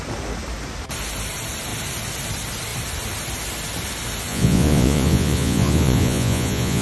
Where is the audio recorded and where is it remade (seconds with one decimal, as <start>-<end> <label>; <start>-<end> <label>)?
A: 0.0-4.3 recorded; 4.3-6.8 remade